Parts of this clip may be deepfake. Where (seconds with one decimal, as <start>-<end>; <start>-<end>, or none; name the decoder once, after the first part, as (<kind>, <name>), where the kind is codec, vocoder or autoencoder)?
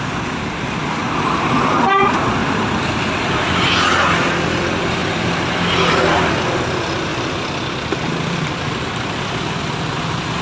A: 5.0-6.3 (vocoder, BigVGAN v2); 7.1-9.6